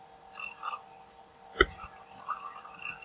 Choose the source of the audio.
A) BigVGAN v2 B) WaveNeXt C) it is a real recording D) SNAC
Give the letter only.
A